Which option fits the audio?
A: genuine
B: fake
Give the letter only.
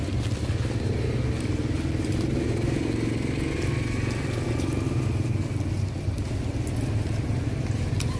A